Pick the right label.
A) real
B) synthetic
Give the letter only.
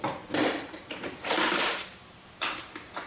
B